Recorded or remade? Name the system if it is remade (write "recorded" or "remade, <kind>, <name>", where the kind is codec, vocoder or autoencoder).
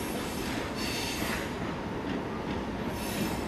recorded